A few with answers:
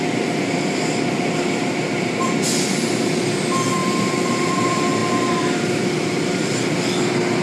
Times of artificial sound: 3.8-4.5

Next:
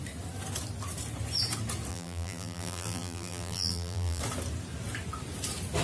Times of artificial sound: 1.9-4.2